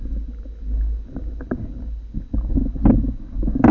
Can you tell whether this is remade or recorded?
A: recorded